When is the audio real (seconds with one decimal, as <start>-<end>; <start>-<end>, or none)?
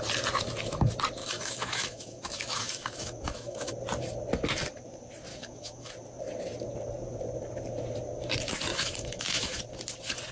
0.0-1.2; 3.7-5.3; 5.9-8.7; 9.6-10.3